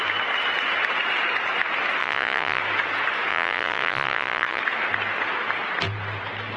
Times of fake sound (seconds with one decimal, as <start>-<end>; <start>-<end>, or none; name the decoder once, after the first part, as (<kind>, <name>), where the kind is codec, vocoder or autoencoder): 2.0-2.6 (vocoder, Vocos); 3.3-4.6

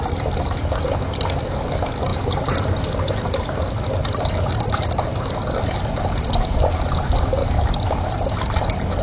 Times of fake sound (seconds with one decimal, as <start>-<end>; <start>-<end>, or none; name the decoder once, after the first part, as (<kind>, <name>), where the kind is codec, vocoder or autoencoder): 2.1-5.6 (vocoder, BigVGAN v2); 7.4-7.9